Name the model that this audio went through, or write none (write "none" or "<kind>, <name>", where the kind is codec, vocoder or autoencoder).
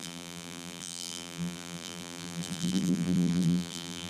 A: vocoder, BigVGAN v2